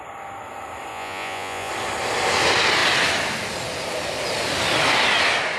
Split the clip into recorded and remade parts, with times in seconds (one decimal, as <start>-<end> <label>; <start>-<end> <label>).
0.0-0.9 recorded; 0.9-1.7 remade; 1.7-5.6 recorded